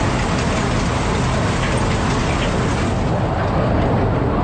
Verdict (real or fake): real